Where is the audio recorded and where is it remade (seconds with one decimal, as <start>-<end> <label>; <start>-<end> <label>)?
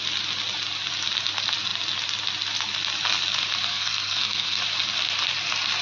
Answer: 0.0-3.7 recorded; 3.7-4.6 remade; 4.6-5.8 recorded